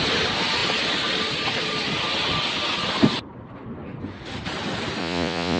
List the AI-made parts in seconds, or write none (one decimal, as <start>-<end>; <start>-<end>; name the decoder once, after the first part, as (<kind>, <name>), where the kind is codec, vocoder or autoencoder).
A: 5.0-5.6 (vocoder, Vocos)